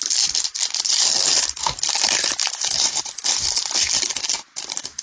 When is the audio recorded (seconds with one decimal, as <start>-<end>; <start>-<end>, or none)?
0.0-5.0